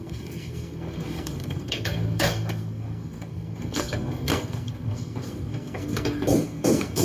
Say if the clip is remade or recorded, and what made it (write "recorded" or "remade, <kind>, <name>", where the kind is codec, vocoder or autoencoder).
remade, codec, SNAC